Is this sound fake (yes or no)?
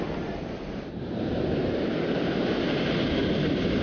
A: yes